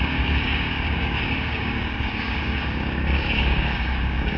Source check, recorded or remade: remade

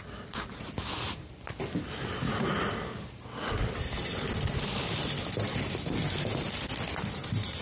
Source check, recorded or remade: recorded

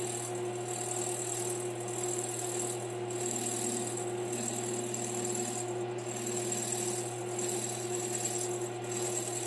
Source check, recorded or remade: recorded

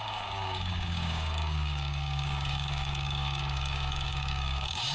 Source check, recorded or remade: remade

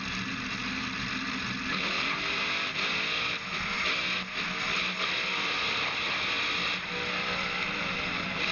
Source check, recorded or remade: recorded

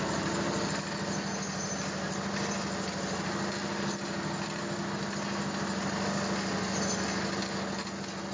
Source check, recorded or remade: recorded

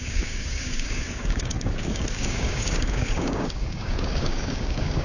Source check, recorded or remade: remade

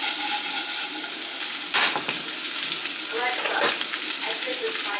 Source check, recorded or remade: recorded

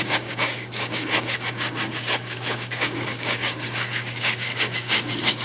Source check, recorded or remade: remade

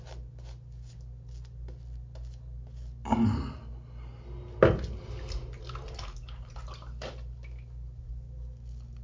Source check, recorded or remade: recorded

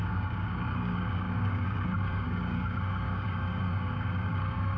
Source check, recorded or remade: remade